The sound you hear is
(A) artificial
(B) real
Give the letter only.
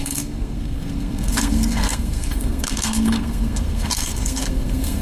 A